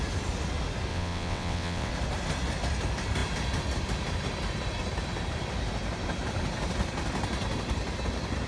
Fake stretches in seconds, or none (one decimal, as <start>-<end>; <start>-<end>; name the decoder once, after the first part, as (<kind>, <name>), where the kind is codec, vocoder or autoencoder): 0.9-1.9 (vocoder, WaveNeXt)